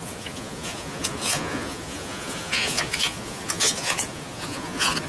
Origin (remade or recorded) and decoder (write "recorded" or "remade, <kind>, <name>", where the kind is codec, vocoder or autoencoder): remade, vocoder, Vocos